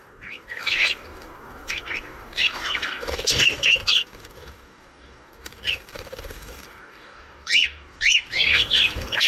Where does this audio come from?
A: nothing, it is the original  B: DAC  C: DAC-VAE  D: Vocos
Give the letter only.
B